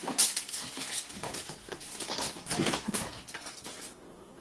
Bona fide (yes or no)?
no